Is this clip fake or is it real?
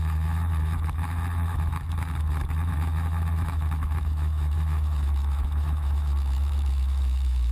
fake